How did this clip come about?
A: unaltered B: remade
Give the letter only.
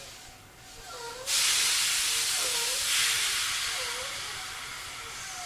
A